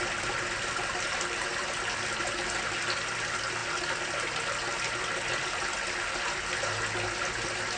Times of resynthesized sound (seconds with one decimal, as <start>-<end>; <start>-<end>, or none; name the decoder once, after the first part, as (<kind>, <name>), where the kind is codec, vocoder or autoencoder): none